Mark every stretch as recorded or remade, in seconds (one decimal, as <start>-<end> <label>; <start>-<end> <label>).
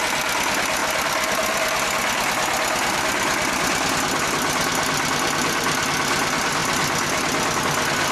0.0-8.1 recorded